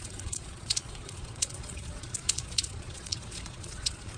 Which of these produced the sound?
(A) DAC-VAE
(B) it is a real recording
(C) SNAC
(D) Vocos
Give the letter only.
D